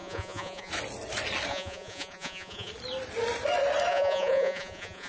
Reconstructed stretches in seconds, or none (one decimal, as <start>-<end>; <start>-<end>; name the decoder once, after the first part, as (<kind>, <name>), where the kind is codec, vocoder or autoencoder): 0.0-0.7 (vocoder, Vocos); 1.5-2.7; 3.9-5.1